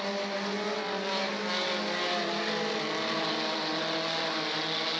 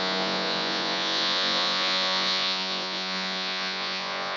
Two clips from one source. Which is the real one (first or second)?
first